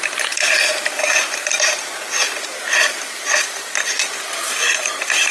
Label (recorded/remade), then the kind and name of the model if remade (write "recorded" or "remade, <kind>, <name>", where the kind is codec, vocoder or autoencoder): recorded